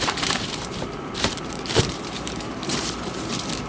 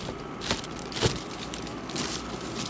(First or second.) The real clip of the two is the second